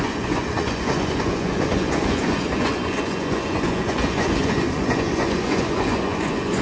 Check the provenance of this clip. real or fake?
fake